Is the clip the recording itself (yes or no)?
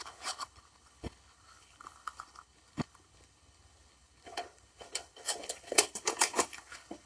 no